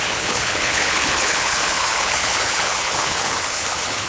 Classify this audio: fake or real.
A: fake